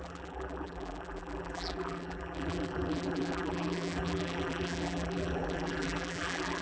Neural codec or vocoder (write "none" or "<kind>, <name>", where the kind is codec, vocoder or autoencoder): vocoder, BigVGAN v2